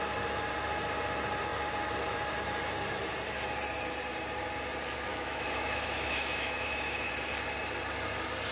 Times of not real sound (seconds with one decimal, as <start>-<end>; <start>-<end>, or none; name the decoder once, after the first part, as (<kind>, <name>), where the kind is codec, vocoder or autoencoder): 5.1-7.1 (autoencoder, DAC-VAE)